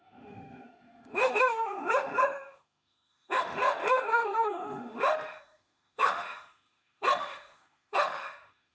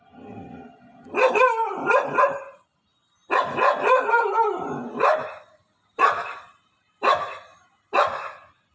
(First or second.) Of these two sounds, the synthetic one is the first